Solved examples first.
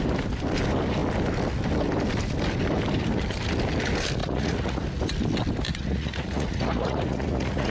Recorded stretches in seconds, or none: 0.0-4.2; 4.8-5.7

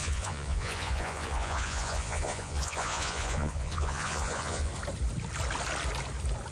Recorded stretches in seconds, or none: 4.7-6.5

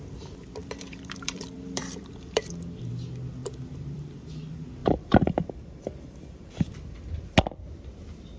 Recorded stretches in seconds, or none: 0.0-0.6; 2.9-3.4; 4.3-4.8; 5.5-8.4